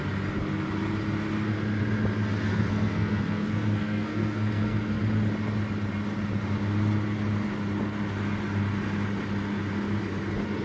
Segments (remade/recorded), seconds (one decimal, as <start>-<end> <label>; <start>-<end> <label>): 0.0-2.5 recorded; 2.5-5.0 remade; 5.0-10.6 recorded